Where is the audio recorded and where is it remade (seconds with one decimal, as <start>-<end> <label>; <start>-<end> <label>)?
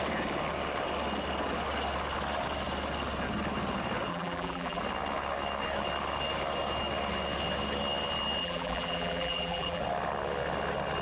0.0-4.1 recorded; 4.1-4.8 remade; 4.8-8.4 recorded; 8.4-9.8 remade; 9.8-11.0 recorded